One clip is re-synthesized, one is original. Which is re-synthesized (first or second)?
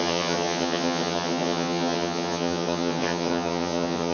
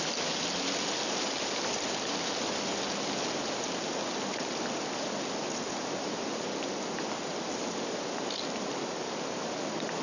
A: first